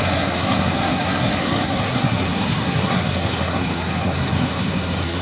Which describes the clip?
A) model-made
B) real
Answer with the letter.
A